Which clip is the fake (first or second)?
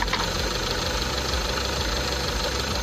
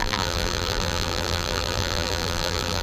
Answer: second